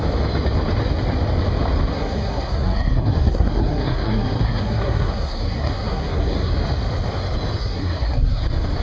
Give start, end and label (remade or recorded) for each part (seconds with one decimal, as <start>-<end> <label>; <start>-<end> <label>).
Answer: 0.0-1.9 recorded; 1.9-6.5 remade; 6.5-7.6 recorded; 7.6-8.4 remade; 8.4-8.8 recorded